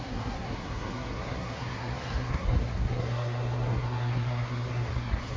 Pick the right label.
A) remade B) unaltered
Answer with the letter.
A